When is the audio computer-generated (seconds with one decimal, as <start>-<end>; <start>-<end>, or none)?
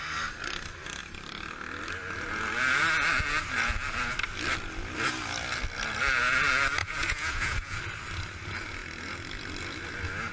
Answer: 6.8-7.8